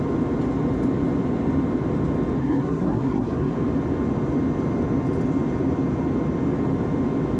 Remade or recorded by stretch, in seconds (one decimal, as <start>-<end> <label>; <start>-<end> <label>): 0.0-2.4 recorded; 2.4-3.5 remade; 3.5-7.4 recorded